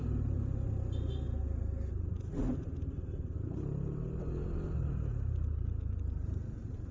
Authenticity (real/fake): real